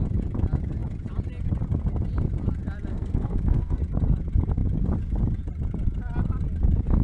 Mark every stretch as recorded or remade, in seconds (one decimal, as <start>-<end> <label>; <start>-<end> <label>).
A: 0.0-2.9 recorded; 2.9-3.8 remade; 3.8-7.0 recorded